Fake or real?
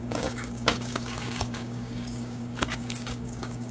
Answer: fake